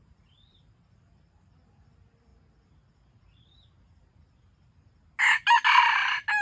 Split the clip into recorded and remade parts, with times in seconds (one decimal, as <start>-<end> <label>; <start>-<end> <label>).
0.0-2.3 remade; 2.3-5.8 recorded; 5.8-6.4 remade